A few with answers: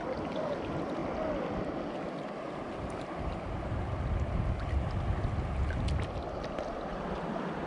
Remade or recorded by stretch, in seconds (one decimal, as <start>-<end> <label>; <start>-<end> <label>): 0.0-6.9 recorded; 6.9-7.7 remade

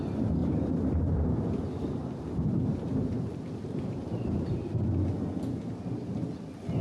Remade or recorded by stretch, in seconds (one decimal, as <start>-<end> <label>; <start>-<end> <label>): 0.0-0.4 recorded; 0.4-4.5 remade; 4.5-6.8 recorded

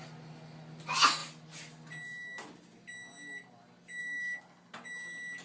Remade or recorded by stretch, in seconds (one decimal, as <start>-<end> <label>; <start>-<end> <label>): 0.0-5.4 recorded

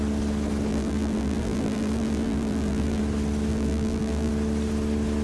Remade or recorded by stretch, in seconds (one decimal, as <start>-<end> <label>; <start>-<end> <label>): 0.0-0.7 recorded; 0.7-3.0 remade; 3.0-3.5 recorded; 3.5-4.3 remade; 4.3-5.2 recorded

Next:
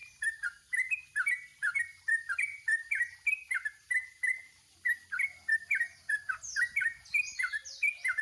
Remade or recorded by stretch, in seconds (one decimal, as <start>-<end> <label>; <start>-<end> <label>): 0.0-1.0 remade; 1.0-8.2 recorded